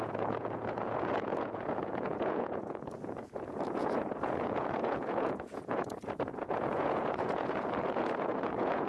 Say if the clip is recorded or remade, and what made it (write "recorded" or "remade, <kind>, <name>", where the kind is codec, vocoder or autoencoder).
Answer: remade, vocoder, Vocos